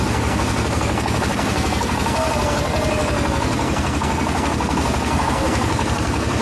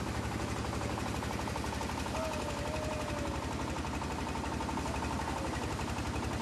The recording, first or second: second